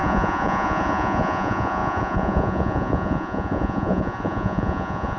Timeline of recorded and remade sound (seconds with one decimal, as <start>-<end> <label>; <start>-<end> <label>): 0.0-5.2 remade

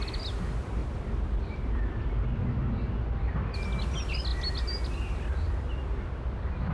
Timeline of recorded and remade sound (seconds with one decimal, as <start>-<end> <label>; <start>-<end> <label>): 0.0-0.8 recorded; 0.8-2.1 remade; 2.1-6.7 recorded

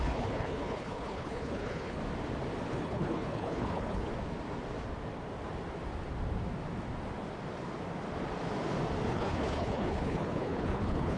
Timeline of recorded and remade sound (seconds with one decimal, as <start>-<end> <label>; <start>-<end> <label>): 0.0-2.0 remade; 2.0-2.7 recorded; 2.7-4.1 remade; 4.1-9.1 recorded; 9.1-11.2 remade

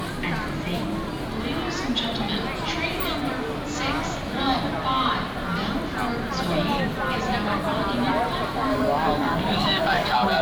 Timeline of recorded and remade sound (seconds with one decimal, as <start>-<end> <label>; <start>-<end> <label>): 0.0-8.7 recorded; 8.7-10.4 remade

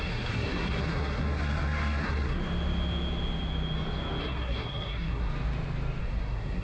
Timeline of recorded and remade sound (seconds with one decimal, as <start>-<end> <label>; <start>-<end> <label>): 0.0-2.4 remade; 2.4-4.2 recorded; 4.2-5.3 remade; 5.3-6.0 recorded; 6.0-6.6 remade

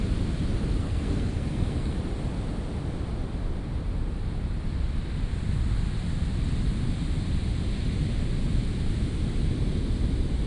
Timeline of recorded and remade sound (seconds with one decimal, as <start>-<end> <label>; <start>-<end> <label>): 0.0-0.8 recorded; 0.8-2.0 remade; 2.0-10.5 recorded

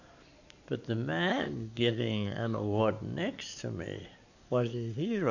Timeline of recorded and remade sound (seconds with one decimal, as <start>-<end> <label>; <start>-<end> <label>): 0.0-1.3 recorded; 1.3-2.8 remade; 2.8-4.3 recorded; 4.3-5.3 remade